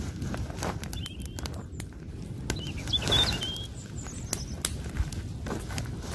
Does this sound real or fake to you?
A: real